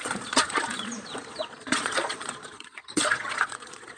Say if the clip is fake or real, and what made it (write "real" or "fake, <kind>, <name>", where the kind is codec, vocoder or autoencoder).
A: fake, vocoder, Vocos